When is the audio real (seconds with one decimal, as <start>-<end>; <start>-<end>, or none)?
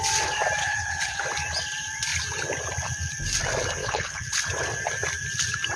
0.0-0.6; 1.2-3.8; 4.4-5.8